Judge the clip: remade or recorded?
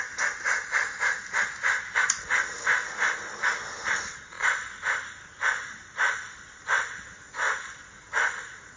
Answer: recorded